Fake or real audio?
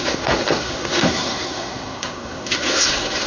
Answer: fake